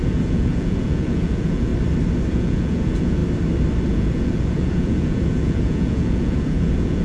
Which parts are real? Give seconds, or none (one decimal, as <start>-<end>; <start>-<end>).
1.7-2.3; 3.2-3.9